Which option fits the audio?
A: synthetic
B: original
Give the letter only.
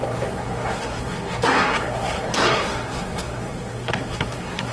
A